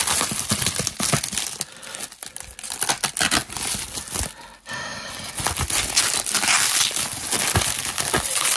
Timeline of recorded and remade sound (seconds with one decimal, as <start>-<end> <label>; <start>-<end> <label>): 0.0-8.6 recorded